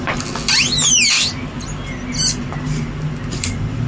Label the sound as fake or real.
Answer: real